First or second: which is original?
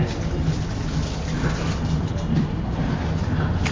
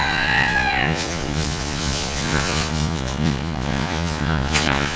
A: first